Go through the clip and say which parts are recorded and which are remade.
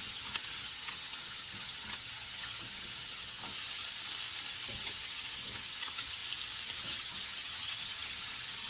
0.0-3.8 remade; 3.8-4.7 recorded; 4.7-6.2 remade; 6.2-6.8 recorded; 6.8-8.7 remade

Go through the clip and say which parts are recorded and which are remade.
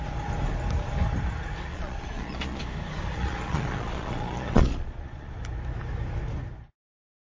0.0-1.7 recorded; 1.7-2.6 remade; 2.6-3.1 recorded; 3.1-5.3 remade; 5.3-7.4 recorded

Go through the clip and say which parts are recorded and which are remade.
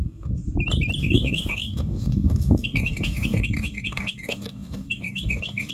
0.0-0.4 remade; 0.4-1.0 recorded; 1.0-5.7 remade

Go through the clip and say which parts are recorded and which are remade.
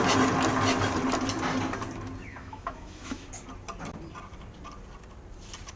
0.0-2.3 recorded; 2.3-3.3 remade; 3.3-5.8 recorded